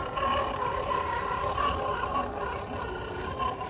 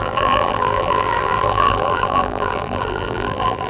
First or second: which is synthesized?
second